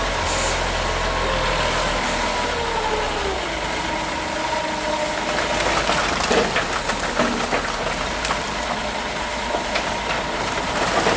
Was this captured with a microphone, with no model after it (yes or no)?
yes